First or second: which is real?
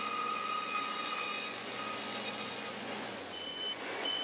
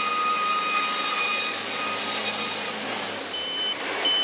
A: second